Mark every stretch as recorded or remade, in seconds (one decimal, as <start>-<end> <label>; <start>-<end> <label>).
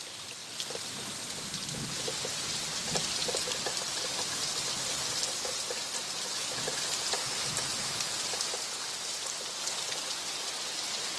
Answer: 0.0-11.2 recorded